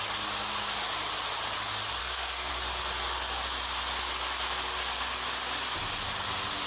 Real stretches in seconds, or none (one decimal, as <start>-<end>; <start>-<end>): 0.0-2.0; 2.5-6.7